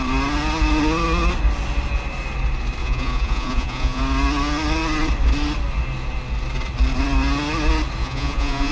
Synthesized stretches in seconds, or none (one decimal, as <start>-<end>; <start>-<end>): 2.8-4.0; 8.0-8.7